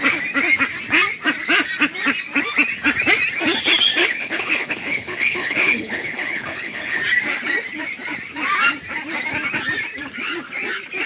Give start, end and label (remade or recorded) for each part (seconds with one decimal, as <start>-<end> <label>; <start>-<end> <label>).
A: 0.0-4.0 recorded; 4.0-7.0 remade; 7.0-11.1 recorded